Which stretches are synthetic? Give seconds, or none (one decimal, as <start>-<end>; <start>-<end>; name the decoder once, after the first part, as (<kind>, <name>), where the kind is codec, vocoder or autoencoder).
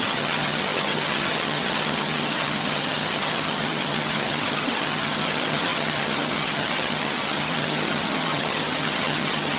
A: 0.0-9.6 (vocoder, HiFi-GAN)